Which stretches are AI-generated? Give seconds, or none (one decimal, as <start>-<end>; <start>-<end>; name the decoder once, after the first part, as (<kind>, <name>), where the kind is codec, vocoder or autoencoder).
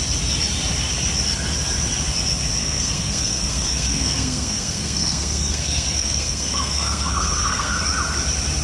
2.6-7.8 (codec, SNAC)